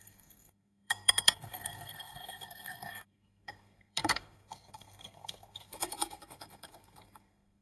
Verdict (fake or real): fake